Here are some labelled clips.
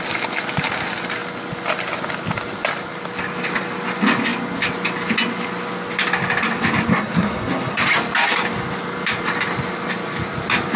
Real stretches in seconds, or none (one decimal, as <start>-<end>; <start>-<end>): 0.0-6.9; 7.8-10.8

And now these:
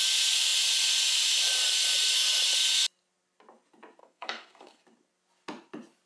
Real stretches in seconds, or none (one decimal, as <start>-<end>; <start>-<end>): 0.0-4.0; 4.8-6.1

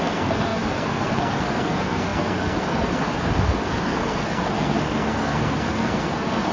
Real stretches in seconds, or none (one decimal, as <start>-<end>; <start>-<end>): none

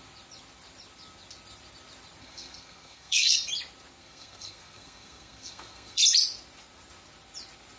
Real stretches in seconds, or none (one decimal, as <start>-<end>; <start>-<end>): 0.0-2.2; 3.5-4.0; 6.0-7.8

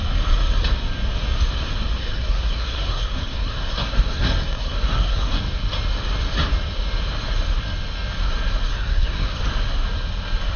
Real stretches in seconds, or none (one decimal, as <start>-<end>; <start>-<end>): 0.0-2.0; 5.4-8.7; 9.4-10.6

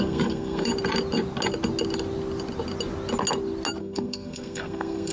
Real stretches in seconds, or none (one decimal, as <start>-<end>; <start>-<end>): 0.7-3.8